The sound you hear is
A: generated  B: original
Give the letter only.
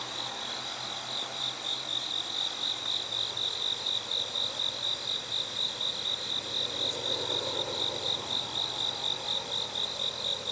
B